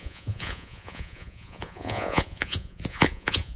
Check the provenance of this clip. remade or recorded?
remade